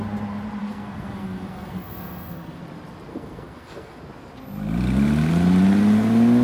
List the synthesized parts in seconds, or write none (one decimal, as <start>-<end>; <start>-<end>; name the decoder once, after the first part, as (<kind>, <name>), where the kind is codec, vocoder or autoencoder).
0.6-2.6 (codec, SNAC); 3.1-4.0